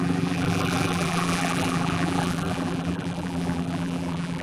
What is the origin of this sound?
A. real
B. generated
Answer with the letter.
B